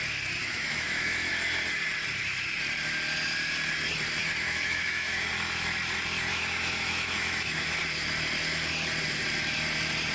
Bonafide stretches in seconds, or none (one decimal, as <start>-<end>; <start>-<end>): 0.0-0.4; 1.3-4.2; 5.3-6.3; 7.8-10.1